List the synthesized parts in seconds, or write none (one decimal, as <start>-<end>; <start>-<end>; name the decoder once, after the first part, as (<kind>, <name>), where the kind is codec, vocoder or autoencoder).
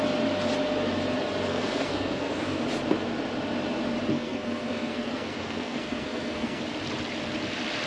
1.5-2.6 (codec, SNAC); 4.1-6.6